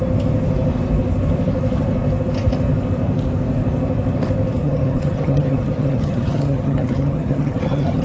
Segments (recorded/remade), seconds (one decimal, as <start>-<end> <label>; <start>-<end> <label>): 0.0-4.6 recorded; 4.6-8.0 remade